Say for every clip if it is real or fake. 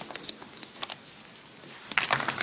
real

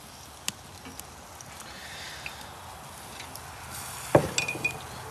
real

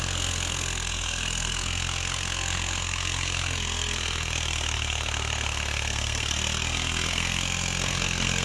fake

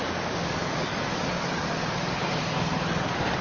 fake